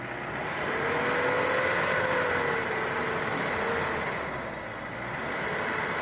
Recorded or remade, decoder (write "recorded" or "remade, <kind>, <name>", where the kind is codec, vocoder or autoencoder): recorded